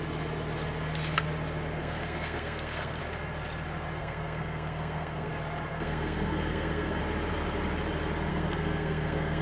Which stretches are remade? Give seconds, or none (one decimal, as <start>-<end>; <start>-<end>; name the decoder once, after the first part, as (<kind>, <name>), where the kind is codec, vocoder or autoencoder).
1.8-3.0 (codec, SNAC); 4.0-5.3; 5.7-7.0; 8.3-9.4